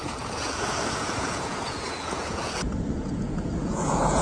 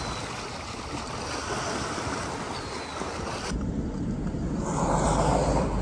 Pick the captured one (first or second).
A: second